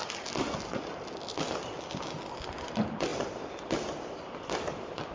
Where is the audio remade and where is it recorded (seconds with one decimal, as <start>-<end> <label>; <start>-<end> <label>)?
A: 0.0-3.1 recorded; 3.1-3.7 remade; 3.7-5.1 recorded